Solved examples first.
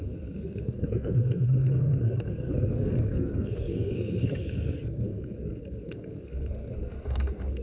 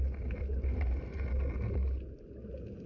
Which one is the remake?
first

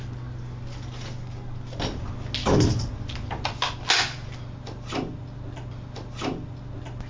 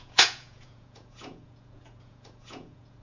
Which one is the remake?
second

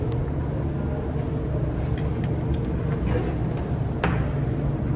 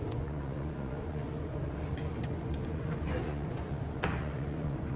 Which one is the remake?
second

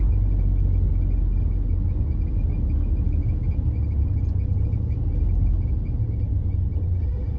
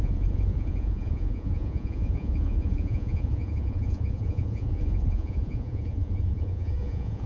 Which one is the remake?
second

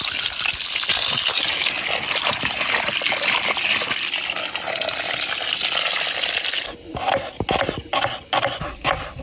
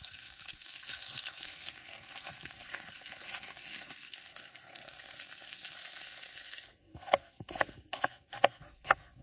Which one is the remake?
second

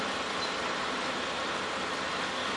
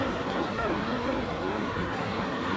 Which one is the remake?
second